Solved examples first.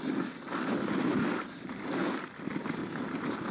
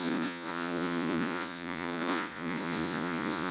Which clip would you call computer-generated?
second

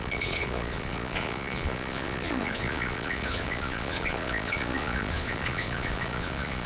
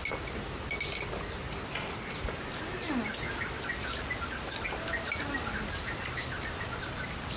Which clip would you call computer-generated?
first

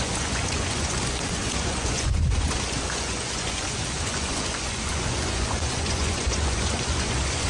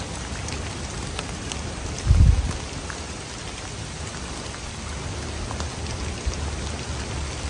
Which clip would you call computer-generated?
first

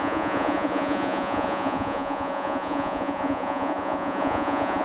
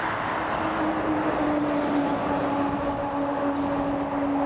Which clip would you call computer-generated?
first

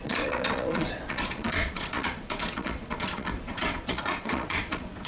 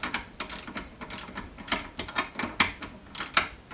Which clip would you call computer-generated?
first